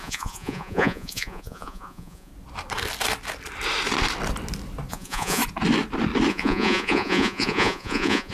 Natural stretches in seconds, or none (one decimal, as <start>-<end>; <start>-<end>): 2.3-4.9; 5.4-6.3